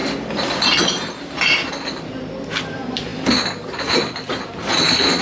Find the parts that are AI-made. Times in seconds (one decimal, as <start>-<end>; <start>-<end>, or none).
2.6-5.2